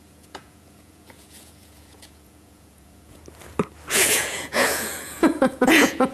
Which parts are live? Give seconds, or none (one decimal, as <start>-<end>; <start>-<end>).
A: 3.2-3.9